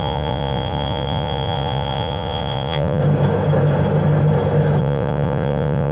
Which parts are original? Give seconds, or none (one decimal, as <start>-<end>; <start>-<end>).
3.0-4.8